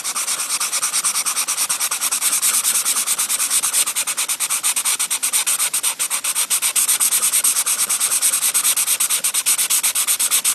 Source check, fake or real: real